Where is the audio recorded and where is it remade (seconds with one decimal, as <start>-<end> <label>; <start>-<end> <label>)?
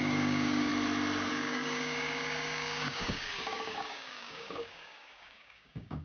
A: 0.0-0.7 remade; 0.7-1.3 recorded; 1.3-6.0 remade